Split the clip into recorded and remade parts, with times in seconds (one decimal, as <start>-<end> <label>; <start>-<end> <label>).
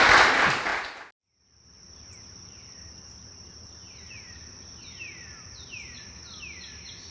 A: 0.0-7.1 recorded